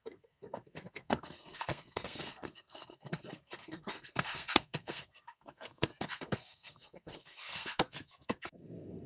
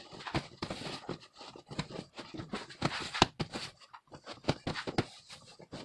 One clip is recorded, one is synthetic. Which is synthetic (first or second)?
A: first